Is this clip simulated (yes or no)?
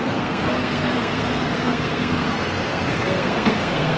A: yes